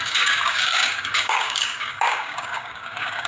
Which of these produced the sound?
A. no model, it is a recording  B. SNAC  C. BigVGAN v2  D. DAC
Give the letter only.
D